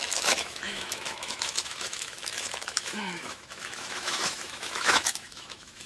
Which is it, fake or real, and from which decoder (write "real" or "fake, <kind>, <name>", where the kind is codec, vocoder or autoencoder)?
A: fake, autoencoder, DAC-VAE